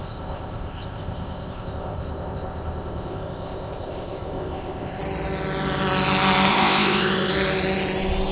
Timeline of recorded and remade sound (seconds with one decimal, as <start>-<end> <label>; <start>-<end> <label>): 0.0-5.0 remade; 5.0-6.5 recorded; 6.5-7.3 remade; 7.3-8.3 recorded